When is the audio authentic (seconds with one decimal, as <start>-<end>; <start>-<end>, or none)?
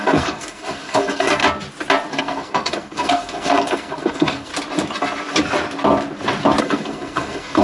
1.4-2.2; 4.5-6.6